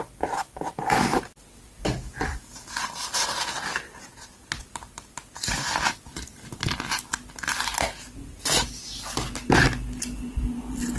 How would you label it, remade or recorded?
recorded